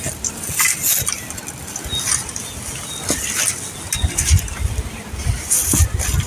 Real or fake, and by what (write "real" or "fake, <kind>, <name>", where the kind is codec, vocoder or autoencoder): real